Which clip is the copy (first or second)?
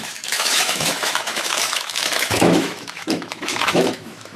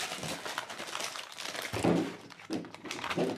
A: first